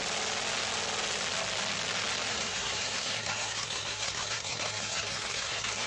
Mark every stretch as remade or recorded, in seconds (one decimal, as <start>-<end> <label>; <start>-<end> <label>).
0.0-2.3 recorded; 2.3-5.9 remade